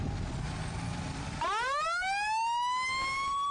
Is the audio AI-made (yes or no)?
no